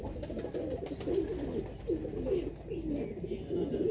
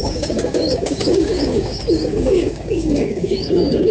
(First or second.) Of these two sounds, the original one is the first